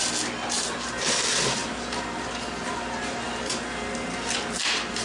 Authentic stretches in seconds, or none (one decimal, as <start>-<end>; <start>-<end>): 0.0-5.0